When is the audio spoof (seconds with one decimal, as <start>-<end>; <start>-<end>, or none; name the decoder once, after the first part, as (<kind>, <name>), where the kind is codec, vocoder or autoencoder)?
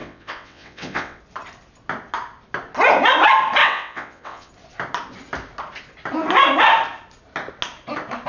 0.0-1.2 (vocoder, WaveNeXt); 3.6-4.5